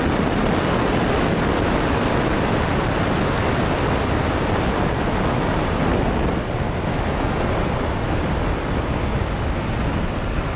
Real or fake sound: real